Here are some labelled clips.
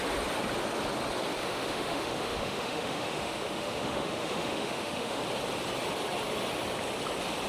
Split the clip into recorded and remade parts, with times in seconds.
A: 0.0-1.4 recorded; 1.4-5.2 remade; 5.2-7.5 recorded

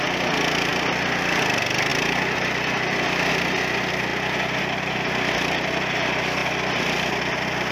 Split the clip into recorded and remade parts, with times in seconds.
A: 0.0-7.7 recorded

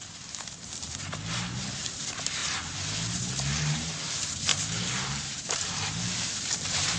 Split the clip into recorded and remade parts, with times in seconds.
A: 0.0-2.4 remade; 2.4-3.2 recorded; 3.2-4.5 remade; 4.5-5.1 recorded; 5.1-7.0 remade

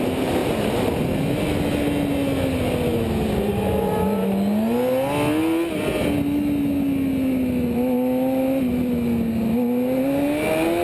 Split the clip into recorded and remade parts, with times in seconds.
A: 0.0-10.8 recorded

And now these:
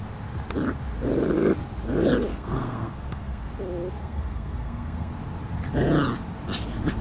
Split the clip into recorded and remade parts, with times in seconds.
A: 0.0-2.3 recorded; 2.3-3.5 remade; 3.5-4.0 recorded; 4.0-5.1 remade; 5.1-7.0 recorded